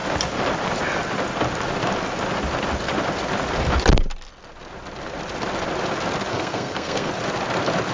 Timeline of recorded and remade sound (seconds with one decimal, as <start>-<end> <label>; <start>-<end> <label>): 0.0-6.3 recorded; 6.3-7.1 remade; 7.1-7.9 recorded